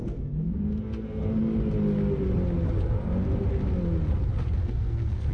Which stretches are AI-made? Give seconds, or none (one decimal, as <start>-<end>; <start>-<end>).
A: 0.0-1.4; 4.6-5.3